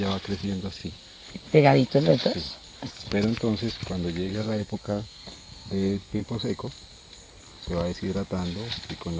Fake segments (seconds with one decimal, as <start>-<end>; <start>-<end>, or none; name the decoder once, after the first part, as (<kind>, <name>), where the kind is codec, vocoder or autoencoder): 4.3-6.2 (codec, SNAC)

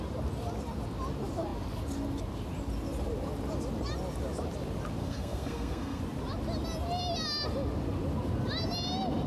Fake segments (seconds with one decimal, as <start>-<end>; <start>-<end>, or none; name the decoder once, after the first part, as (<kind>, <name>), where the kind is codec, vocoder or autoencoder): 5.0-6.0 (codec, SNAC)

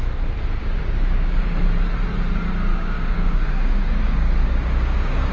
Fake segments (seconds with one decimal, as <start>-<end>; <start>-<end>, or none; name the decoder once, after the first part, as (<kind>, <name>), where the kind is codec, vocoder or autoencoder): 0.6-1.5 (codec, DAC); 2.7-5.3

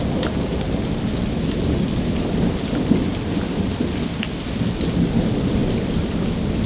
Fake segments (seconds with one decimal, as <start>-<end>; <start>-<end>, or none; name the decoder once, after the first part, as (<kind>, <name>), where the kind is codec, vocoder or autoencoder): none

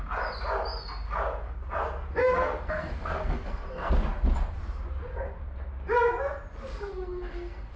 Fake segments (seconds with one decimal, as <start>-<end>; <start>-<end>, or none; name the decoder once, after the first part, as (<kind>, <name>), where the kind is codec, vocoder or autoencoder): 2.2-3.9 (codec, SNAC); 6.7-7.8

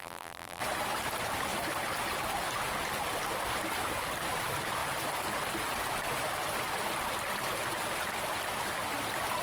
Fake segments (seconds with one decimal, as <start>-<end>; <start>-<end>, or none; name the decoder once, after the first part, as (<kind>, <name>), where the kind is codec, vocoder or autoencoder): 0.0-0.6 (vocoder, BigVGAN v2)

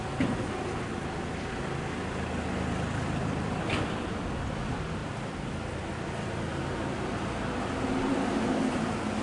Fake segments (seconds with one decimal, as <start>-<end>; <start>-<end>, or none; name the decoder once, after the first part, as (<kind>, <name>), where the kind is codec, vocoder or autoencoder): none

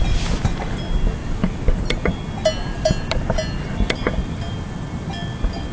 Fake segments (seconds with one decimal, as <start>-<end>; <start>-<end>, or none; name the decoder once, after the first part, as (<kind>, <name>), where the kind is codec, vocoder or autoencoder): none